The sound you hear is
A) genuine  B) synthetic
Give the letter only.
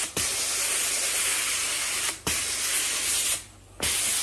A